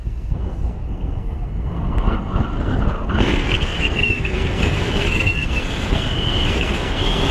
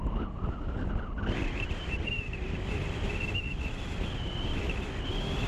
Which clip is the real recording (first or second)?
second